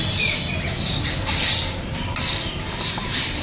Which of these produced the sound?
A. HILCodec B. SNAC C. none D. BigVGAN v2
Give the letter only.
D